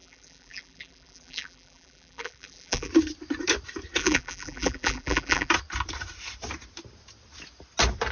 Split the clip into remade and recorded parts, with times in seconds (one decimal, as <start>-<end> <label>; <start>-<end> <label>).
0.0-2.9 remade; 2.9-4.0 recorded; 4.0-5.5 remade; 5.5-8.1 recorded